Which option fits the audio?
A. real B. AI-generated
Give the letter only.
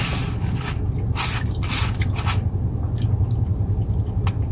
A